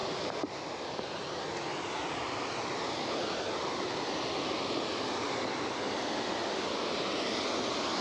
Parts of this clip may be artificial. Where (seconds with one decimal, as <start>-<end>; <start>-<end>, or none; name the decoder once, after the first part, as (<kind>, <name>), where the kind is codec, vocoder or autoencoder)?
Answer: 0.0-0.7 (vocoder, BigVGAN v2)